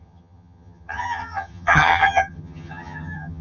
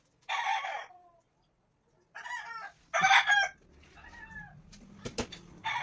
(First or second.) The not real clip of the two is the first